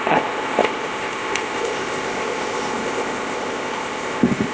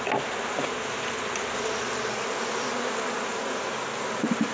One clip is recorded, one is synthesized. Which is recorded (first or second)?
second